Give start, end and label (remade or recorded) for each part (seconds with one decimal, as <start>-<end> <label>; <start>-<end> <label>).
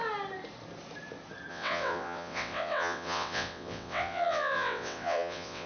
0.0-1.5 recorded; 1.5-5.7 remade